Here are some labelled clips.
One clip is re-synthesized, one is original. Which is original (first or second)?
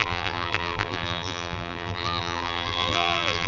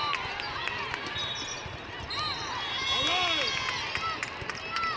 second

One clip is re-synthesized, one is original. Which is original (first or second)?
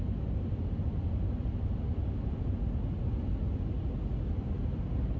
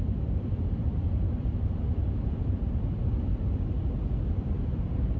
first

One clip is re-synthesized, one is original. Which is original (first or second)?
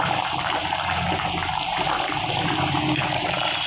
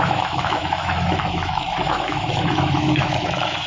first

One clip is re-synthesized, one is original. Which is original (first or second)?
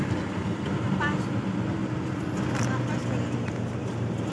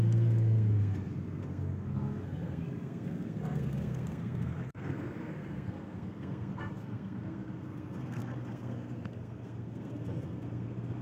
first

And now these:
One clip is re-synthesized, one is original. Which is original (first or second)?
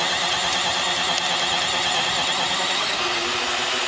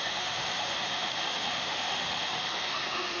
first